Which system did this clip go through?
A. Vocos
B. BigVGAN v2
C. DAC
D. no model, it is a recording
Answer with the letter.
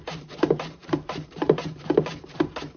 B